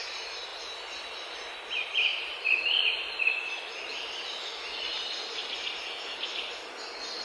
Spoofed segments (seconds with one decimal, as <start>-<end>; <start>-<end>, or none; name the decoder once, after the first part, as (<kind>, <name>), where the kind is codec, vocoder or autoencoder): 2.1-3.2 (vocoder, BigVGAN v2); 5.4-6.5